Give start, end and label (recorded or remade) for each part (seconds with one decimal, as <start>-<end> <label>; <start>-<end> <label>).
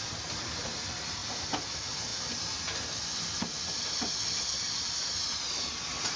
0.0-1.2 remade; 1.2-1.7 recorded; 1.7-6.2 remade